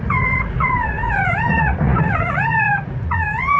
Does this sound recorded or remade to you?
remade